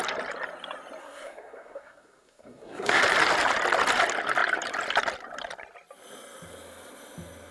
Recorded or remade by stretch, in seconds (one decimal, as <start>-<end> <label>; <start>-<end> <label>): 0.0-1.0 recorded; 1.0-3.0 remade; 3.0-7.5 recorded